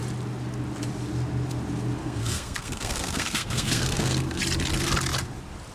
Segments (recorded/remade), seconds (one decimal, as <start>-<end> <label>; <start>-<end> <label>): 0.0-2.0 recorded; 2.0-4.4 remade; 4.4-5.7 recorded